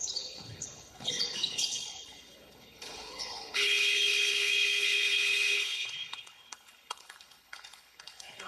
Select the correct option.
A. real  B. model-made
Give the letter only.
B